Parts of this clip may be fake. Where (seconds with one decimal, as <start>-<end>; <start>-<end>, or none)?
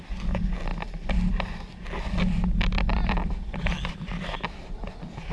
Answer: none